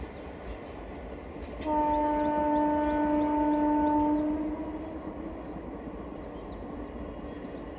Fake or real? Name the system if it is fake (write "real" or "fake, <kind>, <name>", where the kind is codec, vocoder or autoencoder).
real